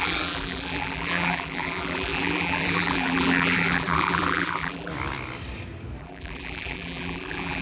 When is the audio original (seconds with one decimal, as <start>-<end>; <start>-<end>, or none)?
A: 4.9-6.0